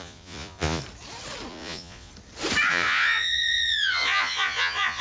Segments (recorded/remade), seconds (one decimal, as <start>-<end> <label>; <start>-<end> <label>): 0.0-0.8 remade; 0.8-1.5 recorded; 1.5-2.1 remade; 2.1-2.7 recorded; 2.7-5.0 remade